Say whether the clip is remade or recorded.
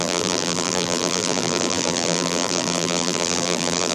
remade